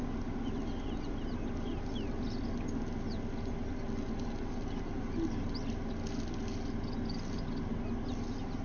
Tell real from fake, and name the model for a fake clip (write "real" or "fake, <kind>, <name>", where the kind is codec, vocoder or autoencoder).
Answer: real